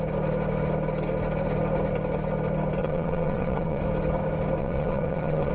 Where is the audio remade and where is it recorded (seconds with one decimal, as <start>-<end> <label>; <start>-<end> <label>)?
0.0-2.8 recorded; 2.8-3.8 remade; 3.8-4.6 recorded; 4.6-5.5 remade